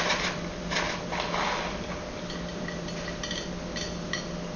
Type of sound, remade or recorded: recorded